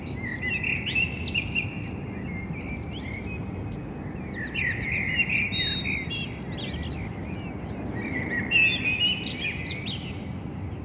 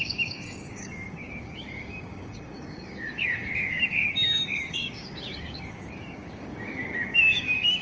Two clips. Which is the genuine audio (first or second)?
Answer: first